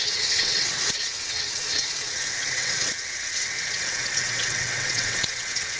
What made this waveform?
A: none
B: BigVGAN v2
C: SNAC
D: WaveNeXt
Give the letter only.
D